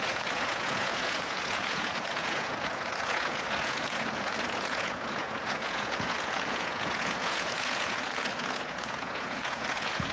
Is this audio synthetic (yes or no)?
yes